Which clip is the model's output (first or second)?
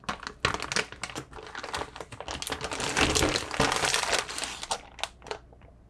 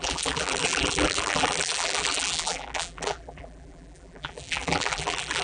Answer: second